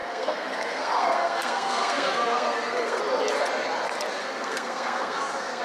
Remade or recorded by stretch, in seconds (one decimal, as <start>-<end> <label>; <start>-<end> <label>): 0.0-3.0 remade; 3.0-4.2 recorded; 4.2-5.6 remade